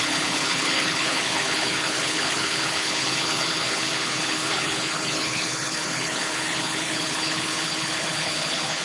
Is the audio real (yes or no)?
no